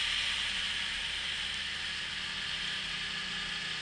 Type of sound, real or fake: real